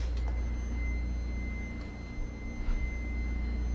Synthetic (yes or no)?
no